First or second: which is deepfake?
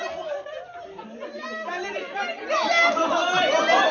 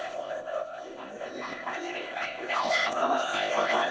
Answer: second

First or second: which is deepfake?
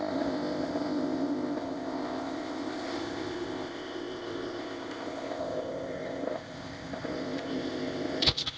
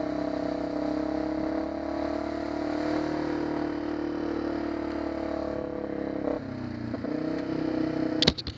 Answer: first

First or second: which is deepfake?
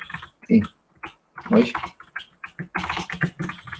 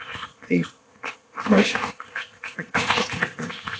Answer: second